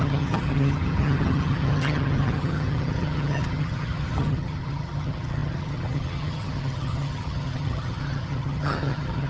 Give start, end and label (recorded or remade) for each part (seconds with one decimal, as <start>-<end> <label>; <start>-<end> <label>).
0.0-9.3 remade